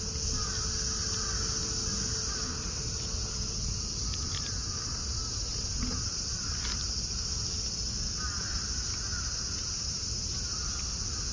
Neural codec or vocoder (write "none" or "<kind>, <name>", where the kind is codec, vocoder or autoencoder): none